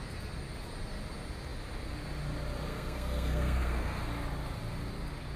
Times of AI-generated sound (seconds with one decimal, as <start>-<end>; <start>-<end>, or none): 2.7-4.1